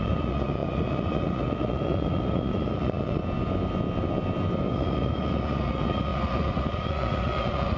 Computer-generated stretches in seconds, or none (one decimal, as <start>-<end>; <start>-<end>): 0.0-3.2; 4.7-7.8